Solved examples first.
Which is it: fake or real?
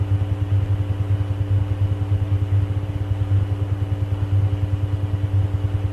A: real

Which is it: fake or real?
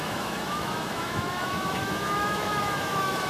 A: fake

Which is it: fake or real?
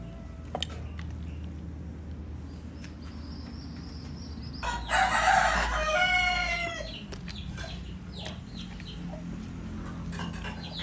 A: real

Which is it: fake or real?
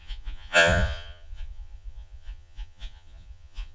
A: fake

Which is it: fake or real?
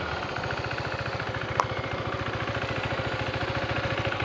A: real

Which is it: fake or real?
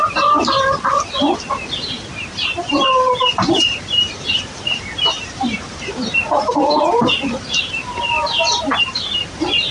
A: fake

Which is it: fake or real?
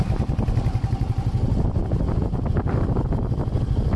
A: real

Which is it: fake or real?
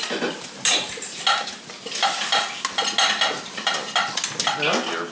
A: real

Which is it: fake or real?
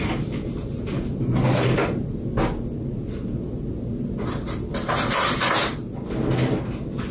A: real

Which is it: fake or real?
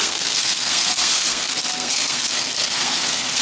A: fake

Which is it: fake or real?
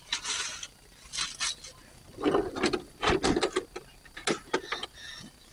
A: real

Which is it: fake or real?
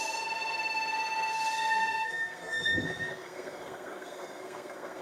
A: fake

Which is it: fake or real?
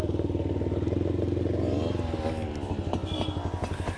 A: real